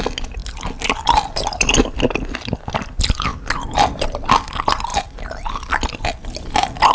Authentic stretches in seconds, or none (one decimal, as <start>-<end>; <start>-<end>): 0.0-6.9